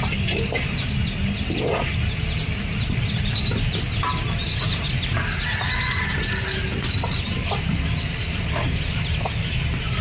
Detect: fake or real real